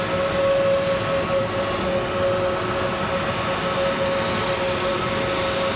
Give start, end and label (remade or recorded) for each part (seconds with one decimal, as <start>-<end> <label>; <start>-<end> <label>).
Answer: 0.0-5.8 recorded